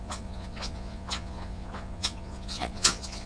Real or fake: fake